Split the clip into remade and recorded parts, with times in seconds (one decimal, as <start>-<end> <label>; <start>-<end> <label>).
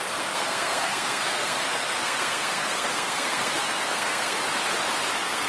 0.0-4.4 remade; 4.4-5.1 recorded; 5.1-5.5 remade